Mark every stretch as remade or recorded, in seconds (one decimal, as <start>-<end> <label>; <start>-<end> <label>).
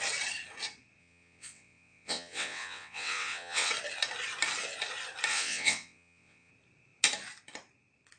0.0-1.0 recorded; 1.0-3.7 remade; 3.7-5.3 recorded; 5.3-6.5 remade; 6.5-8.2 recorded